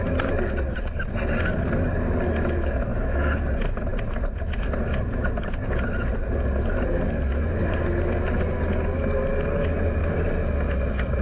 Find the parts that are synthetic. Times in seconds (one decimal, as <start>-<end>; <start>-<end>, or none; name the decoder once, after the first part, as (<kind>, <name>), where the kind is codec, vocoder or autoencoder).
2.9-3.4 (autoencoder, DAC-VAE)